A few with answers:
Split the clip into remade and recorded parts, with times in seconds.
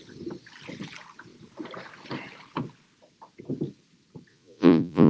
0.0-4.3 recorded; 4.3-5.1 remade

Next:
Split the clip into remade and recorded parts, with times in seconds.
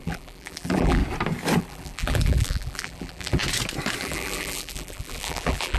0.0-1.0 remade; 1.0-1.6 recorded; 1.6-3.4 remade; 3.4-4.0 recorded; 4.0-5.8 remade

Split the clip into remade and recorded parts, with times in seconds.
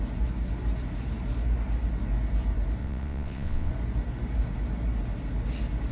0.0-2.8 recorded; 2.8-3.7 remade; 3.7-5.9 recorded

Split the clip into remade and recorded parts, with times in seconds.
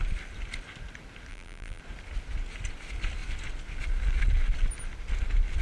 0.0-1.3 recorded; 1.3-1.8 remade; 1.8-5.6 recorded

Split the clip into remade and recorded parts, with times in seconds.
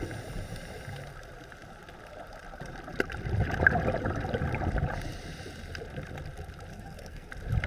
0.0-6.7 recorded; 6.7-7.3 remade; 7.3-7.7 recorded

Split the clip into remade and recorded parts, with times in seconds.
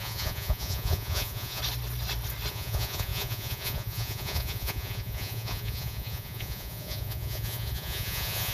0.0-1.6 remade; 1.6-2.5 recorded; 2.5-8.5 remade